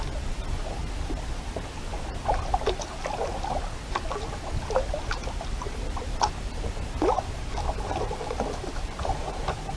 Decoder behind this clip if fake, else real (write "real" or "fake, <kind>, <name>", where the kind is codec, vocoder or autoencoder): real